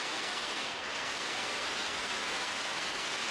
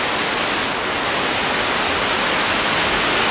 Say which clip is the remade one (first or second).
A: first